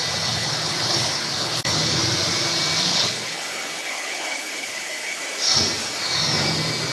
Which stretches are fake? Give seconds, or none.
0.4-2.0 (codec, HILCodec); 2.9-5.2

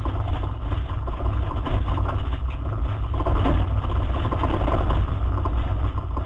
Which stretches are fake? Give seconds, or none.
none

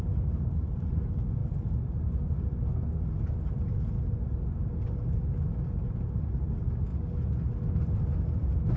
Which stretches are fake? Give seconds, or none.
none

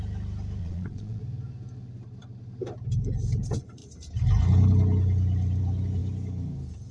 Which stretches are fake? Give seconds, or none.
0.6-1.2 (vocoder, Vocos)